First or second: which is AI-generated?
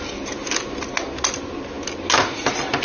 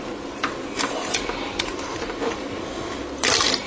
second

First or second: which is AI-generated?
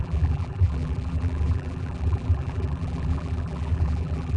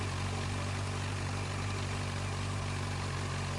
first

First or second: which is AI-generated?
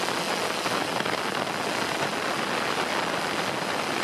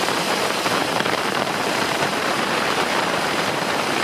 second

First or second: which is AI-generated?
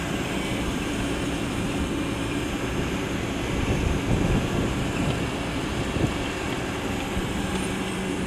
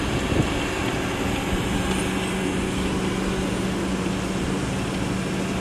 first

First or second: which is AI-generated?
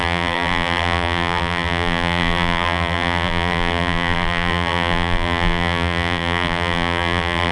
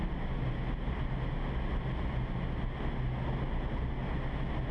first